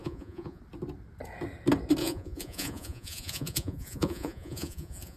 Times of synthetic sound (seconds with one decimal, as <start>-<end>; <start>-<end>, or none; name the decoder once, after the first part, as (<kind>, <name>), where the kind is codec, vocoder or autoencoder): 0.0-0.6 (vocoder, Vocos); 2.0-5.2